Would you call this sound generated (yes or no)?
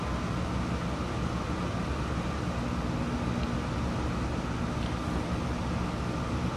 no